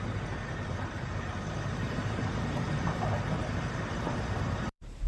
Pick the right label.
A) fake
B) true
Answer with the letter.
A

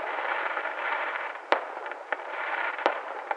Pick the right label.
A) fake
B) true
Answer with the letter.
A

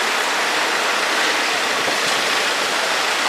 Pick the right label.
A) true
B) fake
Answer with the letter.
A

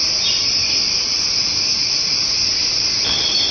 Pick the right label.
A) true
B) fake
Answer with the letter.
A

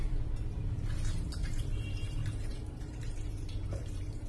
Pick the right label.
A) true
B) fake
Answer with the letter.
B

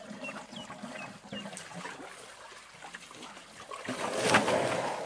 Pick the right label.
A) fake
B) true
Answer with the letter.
B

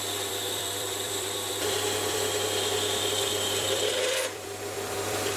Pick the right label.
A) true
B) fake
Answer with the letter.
B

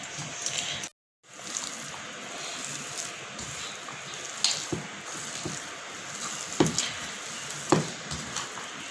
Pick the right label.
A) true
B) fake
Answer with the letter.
A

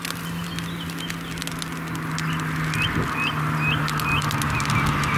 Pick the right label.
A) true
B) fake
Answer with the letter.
A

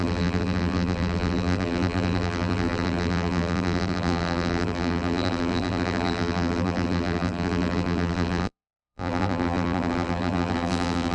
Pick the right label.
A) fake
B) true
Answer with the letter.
A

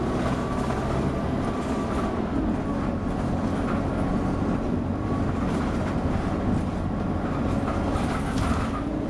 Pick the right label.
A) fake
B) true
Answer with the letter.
B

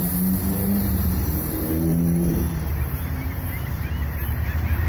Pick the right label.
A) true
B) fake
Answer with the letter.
B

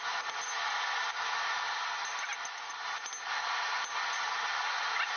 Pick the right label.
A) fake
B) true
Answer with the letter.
B